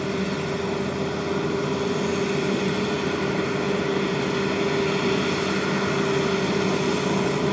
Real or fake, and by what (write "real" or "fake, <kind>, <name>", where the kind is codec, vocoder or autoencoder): real